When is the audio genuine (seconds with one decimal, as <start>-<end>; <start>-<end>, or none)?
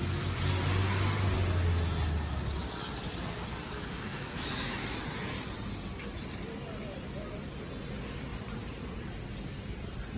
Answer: 0.0-4.1; 5.0-10.2